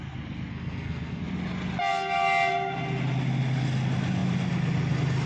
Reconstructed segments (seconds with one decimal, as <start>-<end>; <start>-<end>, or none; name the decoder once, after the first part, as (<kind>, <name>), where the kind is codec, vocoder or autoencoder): 0.5-1.2 (codec, SNAC)

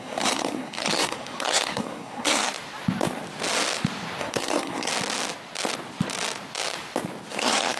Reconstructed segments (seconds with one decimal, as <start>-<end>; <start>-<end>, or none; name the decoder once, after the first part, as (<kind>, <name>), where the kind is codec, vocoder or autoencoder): 0.0-2.5 (codec, SNAC); 4.2-4.9; 7.3-7.8

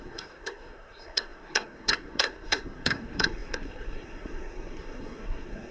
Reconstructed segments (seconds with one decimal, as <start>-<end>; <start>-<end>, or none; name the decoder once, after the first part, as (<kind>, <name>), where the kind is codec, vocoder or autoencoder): 0.0-5.7 (codec, SNAC)

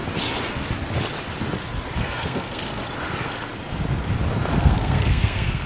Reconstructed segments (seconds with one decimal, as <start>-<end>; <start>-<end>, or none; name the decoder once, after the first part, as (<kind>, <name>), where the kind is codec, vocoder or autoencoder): 2.0-2.8 (codec, SNAC); 4.6-5.7

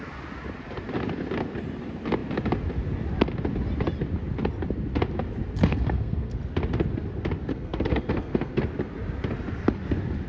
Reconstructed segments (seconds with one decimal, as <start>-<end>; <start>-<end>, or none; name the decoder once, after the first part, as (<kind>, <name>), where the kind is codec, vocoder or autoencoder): 5.6-6.4 (codec, SNAC); 7.5-8.6

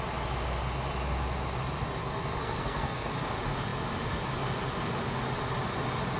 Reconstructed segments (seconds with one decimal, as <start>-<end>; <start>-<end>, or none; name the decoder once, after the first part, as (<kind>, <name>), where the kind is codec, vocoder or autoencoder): 2.0-3.1 (codec, SNAC)

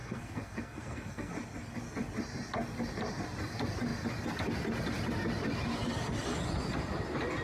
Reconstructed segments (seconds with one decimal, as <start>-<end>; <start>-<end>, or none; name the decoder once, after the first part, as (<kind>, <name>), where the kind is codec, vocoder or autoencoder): 0.0-1.3 (codec, SNAC)